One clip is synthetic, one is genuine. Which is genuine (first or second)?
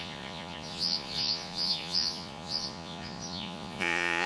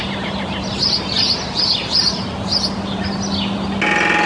second